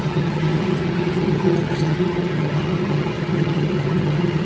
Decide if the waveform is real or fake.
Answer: fake